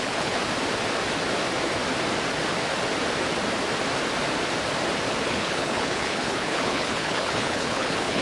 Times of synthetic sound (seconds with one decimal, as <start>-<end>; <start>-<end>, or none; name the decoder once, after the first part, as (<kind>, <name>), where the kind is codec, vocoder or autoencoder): 0.0-0.4 (codec, HILCodec); 5.3-8.2